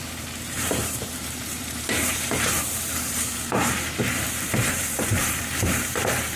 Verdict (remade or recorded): remade